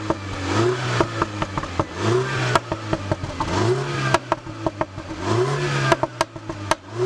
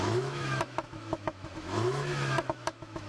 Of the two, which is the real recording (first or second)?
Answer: first